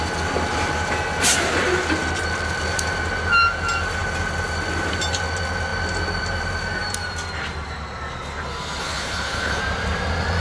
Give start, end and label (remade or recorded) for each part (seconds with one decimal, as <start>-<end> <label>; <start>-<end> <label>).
0.0-8.8 recorded; 8.8-9.6 remade; 9.6-10.4 recorded